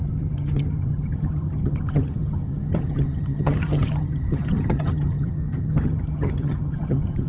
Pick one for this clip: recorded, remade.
remade